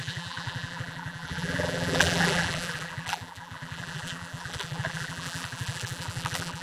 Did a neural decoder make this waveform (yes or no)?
yes